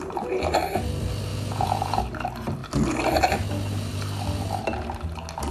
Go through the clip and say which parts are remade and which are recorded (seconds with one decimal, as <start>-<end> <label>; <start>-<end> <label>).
0.0-1.3 recorded; 1.3-2.0 remade; 2.0-5.5 recorded